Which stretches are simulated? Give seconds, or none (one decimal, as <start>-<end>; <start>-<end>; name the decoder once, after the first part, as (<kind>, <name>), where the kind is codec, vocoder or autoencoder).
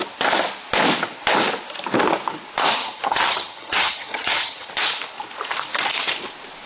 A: 2.8-4.7 (vocoder, HiFi-GAN)